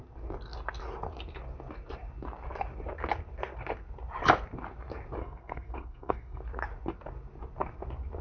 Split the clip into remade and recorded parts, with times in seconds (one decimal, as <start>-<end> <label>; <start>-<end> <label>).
0.0-5.2 recorded; 5.2-6.4 remade; 6.4-8.2 recorded